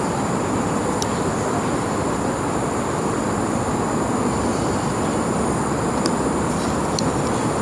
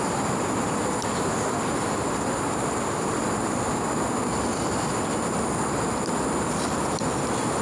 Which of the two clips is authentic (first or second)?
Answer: second